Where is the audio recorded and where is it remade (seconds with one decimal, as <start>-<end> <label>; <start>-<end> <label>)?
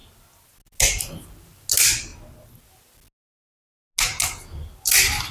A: 0.0-5.3 recorded